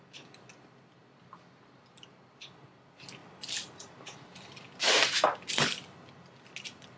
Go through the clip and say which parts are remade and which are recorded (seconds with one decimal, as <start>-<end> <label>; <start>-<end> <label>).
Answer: 0.0-7.0 recorded